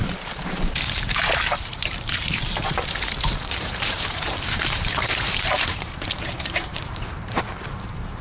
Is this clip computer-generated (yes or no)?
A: yes